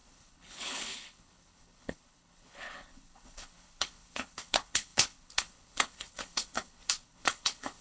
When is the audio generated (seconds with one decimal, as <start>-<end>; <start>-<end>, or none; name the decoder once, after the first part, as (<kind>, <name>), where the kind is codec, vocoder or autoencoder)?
0.0-7.8 (codec, HILCodec)